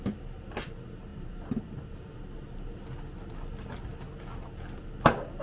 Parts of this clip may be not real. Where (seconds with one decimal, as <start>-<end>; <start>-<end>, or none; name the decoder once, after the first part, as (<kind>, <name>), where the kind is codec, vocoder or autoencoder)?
1.1-1.9 (vocoder, BigVGAN v2)